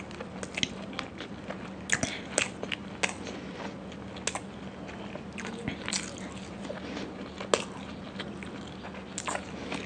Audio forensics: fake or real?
real